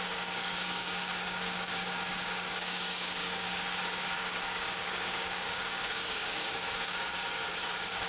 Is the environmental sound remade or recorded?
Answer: remade